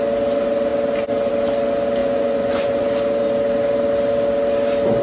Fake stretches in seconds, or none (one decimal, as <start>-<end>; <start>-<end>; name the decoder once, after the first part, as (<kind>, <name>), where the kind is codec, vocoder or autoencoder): 2.0-2.8 (vocoder, Vocos)